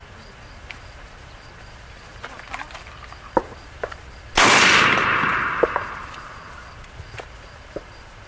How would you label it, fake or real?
real